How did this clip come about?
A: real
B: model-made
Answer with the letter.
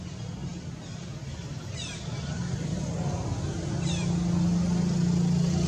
A